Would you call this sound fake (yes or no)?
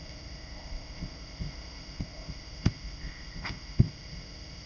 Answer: yes